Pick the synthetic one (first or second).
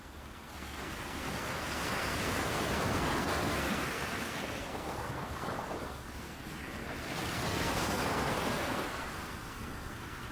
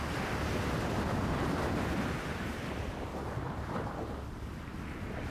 first